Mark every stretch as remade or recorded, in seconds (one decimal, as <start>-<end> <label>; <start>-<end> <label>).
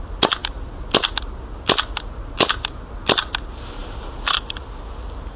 0.0-5.4 recorded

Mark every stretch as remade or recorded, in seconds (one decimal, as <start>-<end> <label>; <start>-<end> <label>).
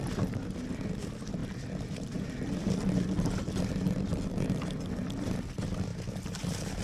0.0-1.4 recorded; 1.4-2.2 remade; 2.2-5.9 recorded; 5.9-6.8 remade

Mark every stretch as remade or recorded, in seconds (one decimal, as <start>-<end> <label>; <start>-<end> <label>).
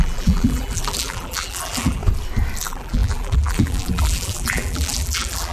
0.0-2.0 remade; 2.0-2.6 recorded; 2.6-5.5 remade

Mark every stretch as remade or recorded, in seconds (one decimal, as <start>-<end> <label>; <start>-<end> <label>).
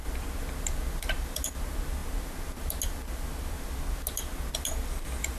0.0-5.4 recorded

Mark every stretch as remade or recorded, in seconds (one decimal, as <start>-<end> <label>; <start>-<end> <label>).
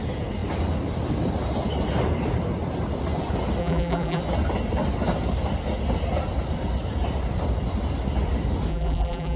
0.0-3.6 recorded; 3.6-4.2 remade; 4.2-8.7 recorded; 8.7-9.4 remade